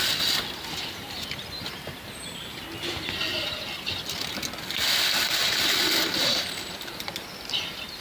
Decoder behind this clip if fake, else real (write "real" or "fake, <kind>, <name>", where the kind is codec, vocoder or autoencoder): real